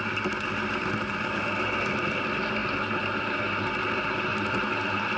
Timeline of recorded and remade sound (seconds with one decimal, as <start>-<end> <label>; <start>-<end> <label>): 0.0-5.2 recorded